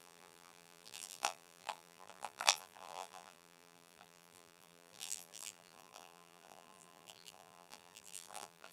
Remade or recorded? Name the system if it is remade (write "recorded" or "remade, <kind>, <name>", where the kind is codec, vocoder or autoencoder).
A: remade, vocoder, BigVGAN v2